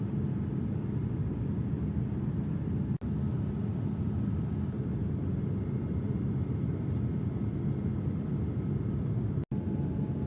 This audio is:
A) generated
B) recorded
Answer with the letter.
B